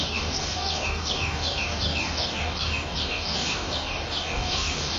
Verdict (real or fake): fake